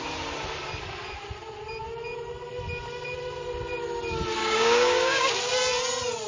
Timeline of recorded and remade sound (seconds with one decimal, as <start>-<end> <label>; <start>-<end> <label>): 0.0-4.4 recorded; 4.4-5.3 remade; 5.3-6.3 recorded